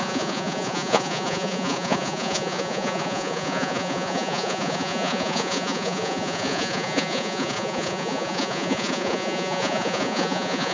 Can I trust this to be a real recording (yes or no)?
no